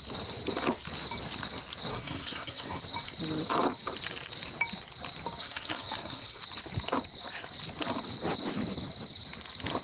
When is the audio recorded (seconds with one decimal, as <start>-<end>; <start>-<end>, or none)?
0.0-1.9; 2.8-5.4; 6.4-9.8